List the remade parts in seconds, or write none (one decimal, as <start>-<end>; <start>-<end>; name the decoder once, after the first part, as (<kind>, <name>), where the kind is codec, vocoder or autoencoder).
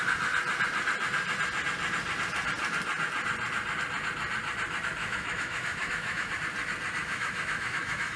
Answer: 5.0-6.3 (autoencoder, DAC-VAE); 7.0-8.2